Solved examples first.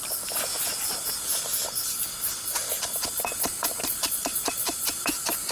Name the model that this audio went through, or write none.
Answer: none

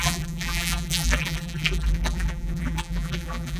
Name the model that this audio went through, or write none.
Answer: vocoder, BigVGAN v2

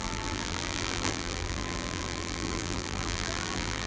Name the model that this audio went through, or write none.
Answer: vocoder, BigVGAN v2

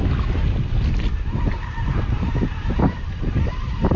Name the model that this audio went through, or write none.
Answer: none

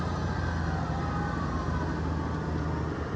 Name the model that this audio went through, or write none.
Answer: none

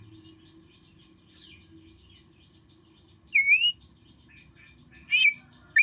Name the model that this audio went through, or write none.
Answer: none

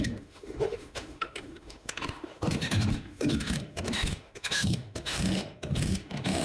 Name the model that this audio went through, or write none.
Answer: autoencoder, DAC-VAE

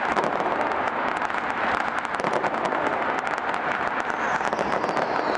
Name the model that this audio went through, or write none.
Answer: none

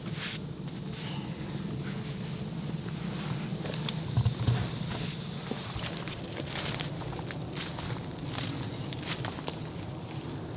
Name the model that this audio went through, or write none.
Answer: none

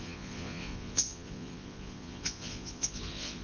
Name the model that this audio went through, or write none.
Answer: vocoder, Vocos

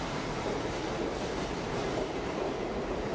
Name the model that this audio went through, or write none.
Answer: vocoder, BigVGAN v2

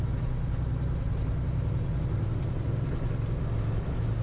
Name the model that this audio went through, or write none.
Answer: none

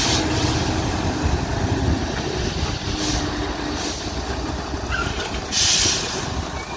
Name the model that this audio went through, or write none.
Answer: none